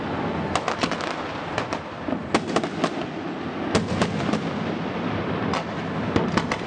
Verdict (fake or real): real